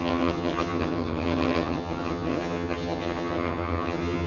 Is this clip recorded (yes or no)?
no